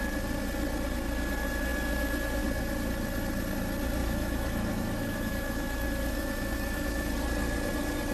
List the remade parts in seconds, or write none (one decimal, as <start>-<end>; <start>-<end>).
4.0-7.1